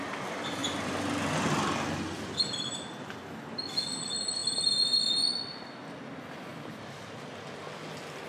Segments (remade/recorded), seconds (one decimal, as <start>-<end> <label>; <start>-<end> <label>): 0.0-0.6 recorded; 0.6-1.3 remade; 1.3-6.5 recorded; 6.5-7.3 remade; 7.3-8.3 recorded